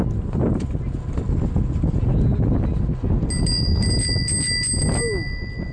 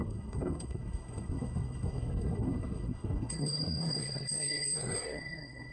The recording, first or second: first